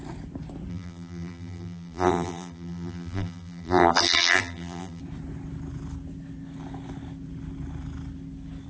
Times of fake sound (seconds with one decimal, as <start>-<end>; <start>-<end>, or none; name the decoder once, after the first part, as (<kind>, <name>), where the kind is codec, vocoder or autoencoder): 0.7-5.0 (vocoder, BigVGAN v2)